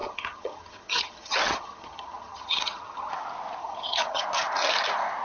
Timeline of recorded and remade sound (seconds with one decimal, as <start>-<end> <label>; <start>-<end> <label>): 0.0-3.1 remade; 3.1-3.6 recorded; 3.6-4.2 remade; 4.2-5.2 recorded